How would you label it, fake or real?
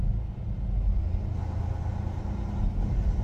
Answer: real